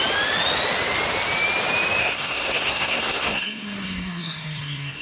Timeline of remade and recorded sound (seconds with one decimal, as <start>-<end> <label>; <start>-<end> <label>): 0.0-2.0 recorded; 2.0-5.0 remade